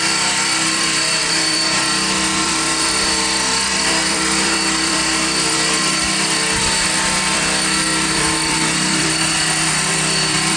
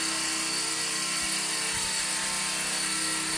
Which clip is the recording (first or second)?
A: second